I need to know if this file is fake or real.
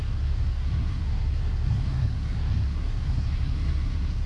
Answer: fake